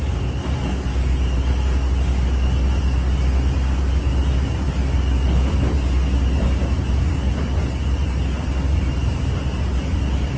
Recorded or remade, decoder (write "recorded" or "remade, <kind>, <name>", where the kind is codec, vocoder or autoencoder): recorded